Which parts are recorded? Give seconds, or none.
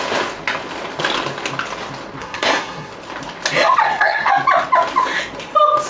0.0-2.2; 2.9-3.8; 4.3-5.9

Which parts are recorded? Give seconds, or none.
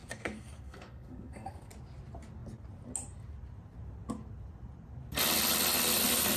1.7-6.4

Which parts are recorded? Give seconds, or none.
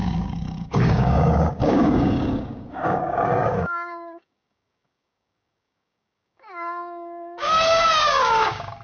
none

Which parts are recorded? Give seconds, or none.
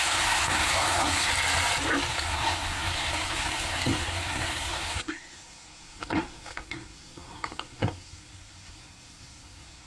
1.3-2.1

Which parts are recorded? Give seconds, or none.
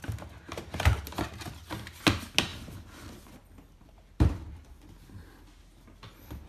0.0-2.5; 4.7-6.5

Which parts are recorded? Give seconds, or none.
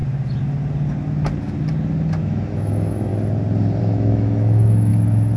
0.0-2.2; 3.1-3.8; 4.9-5.4